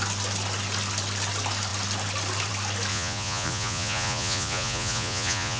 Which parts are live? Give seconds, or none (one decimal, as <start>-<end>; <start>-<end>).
0.0-2.9